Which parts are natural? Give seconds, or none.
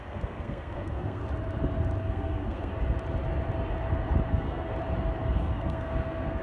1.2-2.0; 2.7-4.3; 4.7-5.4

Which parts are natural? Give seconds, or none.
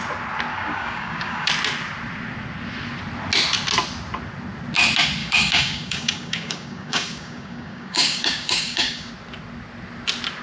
0.0-0.5; 1.5-5.2; 9.1-10.4